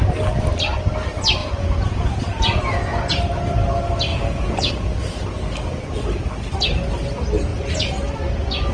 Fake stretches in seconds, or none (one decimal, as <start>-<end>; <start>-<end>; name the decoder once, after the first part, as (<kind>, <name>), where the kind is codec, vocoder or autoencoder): 1.4-3.1 (vocoder, Vocos); 4.1-4.7

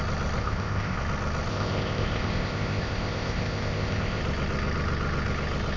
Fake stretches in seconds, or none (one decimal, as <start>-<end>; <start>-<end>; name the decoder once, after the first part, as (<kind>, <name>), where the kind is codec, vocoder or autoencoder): 0.4-1.0 (codec, ZipCodec); 1.5-4.2

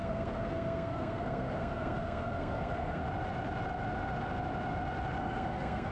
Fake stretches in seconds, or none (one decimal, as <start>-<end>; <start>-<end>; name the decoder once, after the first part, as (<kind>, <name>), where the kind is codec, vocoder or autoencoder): 0.0-3.0 (codec, SNAC); 5.2-5.9